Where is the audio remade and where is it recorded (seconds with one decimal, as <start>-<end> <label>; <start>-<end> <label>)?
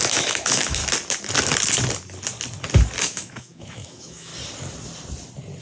0.0-0.8 remade; 0.8-3.0 recorded; 3.0-4.3 remade; 4.3-5.6 recorded